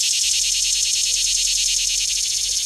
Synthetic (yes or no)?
no